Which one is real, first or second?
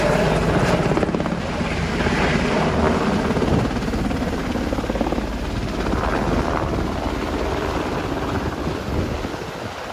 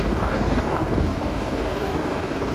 first